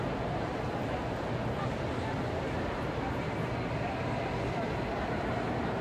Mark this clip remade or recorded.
recorded